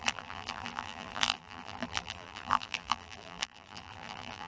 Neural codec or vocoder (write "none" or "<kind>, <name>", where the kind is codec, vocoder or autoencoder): vocoder, BigVGAN v2